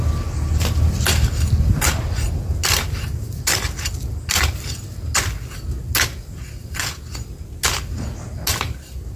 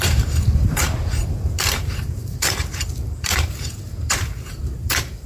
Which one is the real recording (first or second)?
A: first